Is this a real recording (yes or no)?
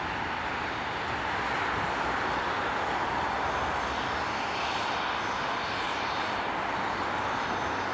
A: yes